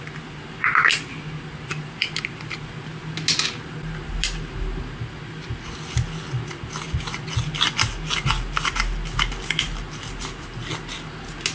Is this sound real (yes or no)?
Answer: yes